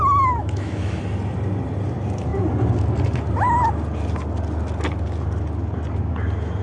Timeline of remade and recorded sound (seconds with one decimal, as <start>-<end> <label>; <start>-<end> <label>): 0.0-0.4 recorded; 0.4-1.0 remade; 1.0-6.6 recorded